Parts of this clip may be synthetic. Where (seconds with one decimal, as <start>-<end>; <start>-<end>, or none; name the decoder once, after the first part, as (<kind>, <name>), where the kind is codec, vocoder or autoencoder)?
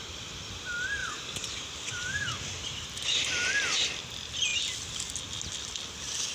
1.0-4.0 (vocoder, BigVGAN v2)